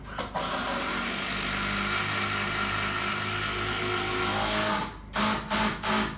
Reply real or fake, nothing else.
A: real